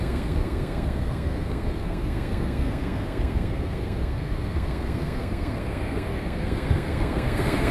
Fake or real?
fake